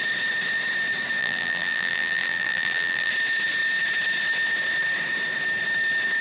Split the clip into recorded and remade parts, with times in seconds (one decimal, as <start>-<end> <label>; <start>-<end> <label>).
0.0-1.2 recorded; 1.2-3.1 remade; 3.1-6.2 recorded